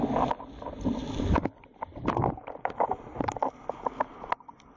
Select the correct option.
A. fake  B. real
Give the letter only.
B